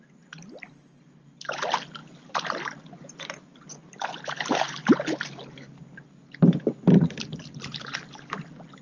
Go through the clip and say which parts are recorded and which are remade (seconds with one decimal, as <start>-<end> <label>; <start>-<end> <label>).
0.0-8.8 recorded